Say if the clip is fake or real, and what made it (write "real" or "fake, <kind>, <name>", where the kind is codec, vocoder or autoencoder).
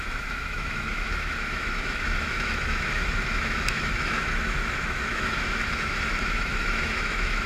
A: fake, autoencoder, DAC-VAE